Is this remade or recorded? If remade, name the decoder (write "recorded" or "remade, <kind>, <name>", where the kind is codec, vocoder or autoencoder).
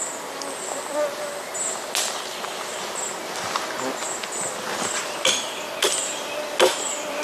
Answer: recorded